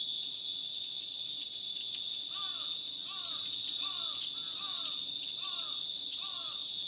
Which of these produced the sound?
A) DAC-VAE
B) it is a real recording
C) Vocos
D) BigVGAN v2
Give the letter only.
B